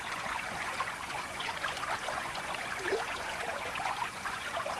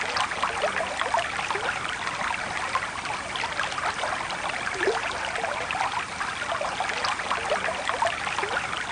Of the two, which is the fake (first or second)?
first